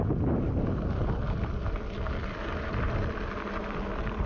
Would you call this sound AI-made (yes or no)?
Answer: no